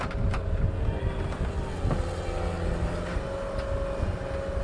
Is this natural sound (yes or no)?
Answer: yes